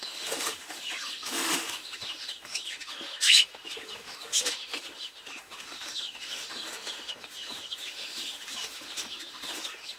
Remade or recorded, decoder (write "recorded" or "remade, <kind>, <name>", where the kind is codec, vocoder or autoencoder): remade, autoencoder, DAC-VAE